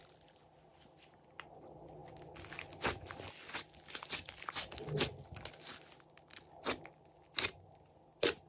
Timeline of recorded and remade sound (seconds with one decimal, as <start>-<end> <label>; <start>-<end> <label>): 0.0-8.5 recorded